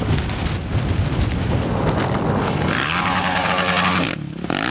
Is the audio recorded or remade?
recorded